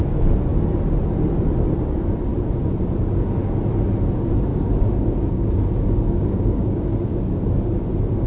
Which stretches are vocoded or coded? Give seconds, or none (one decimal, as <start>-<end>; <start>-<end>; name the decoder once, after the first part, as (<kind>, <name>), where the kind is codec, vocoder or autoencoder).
4.5-7.2 (codec, DAC)